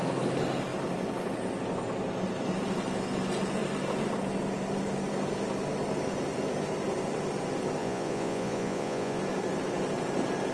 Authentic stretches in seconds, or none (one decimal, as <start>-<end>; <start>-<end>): 0.0-7.8; 9.2-10.5